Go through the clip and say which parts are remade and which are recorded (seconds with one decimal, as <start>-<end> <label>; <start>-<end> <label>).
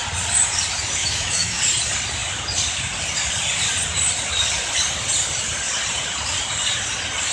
0.0-1.0 recorded; 1.0-1.6 remade; 1.6-7.3 recorded